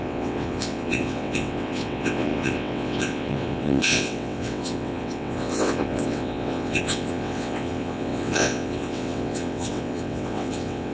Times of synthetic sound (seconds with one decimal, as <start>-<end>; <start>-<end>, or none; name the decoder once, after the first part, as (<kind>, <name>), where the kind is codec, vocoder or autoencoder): 0.0-10.9 (vocoder, WaveNeXt)